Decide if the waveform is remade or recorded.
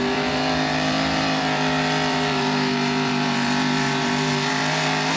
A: remade